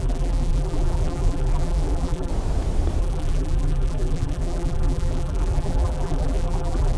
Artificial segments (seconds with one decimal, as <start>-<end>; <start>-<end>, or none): 0.0-2.3; 3.0-7.0